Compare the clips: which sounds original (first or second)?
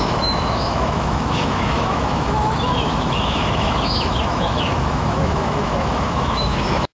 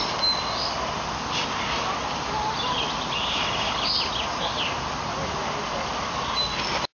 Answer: second